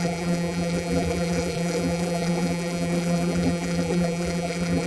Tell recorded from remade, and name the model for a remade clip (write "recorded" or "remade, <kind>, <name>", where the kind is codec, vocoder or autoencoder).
remade, vocoder, BigVGAN v2